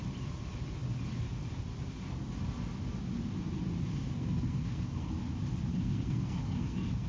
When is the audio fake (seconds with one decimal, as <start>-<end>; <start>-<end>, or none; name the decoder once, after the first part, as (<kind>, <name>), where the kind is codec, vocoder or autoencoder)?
3.9-5.1 (codec, SNAC); 5.7-7.1